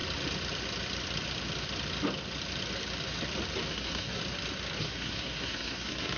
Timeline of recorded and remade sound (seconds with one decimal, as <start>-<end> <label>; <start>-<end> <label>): 0.0-3.7 recorded; 3.7-4.2 remade; 4.2-4.8 recorded; 4.8-6.2 remade